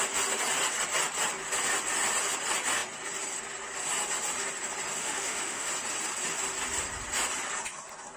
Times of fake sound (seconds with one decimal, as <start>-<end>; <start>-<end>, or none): 5.0-5.7